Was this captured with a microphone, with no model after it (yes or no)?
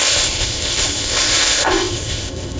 no